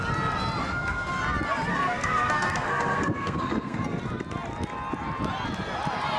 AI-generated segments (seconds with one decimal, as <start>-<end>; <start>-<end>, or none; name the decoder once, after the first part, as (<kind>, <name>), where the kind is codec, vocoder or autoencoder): 0.6-1.2 (codec, SNAC); 1.7-4.0